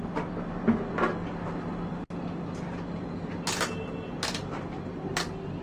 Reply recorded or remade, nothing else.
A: recorded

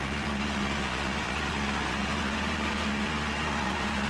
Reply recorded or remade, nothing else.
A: remade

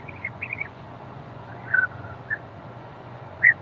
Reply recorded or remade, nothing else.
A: remade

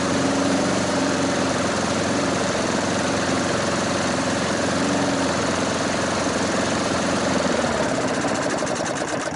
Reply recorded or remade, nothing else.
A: remade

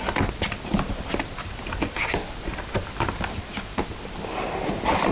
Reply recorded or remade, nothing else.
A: recorded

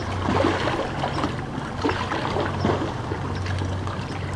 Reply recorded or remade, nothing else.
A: recorded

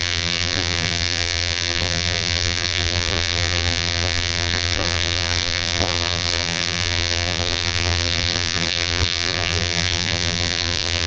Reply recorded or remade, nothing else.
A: remade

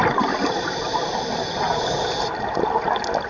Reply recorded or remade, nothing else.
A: recorded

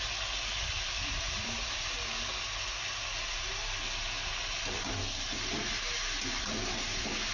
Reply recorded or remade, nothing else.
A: recorded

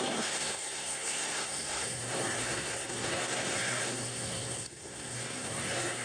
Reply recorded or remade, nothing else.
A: remade